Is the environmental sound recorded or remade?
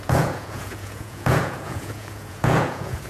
remade